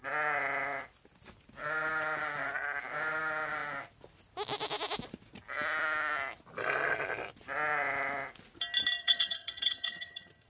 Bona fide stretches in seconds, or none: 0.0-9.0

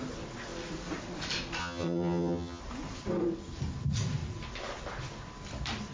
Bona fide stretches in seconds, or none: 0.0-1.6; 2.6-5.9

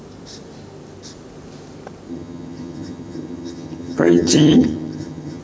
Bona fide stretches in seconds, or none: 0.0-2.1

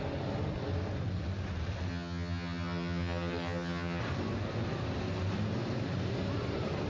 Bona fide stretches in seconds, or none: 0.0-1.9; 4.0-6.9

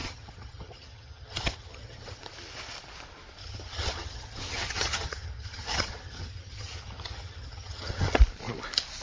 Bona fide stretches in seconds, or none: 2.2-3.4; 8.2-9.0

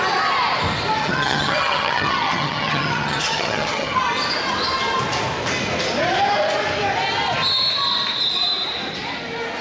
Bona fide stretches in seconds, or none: 0.0-1.0; 4.0-9.6

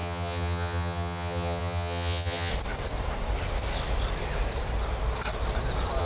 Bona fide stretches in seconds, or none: 2.5-6.0